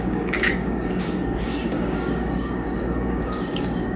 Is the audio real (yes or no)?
no